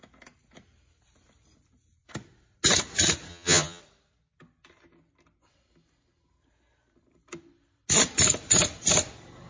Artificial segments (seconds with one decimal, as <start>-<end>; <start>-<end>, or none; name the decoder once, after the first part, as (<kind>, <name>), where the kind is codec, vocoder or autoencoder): 3.3-3.8 (vocoder, HiFi-GAN)